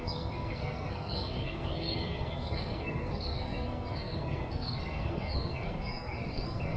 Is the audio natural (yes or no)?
no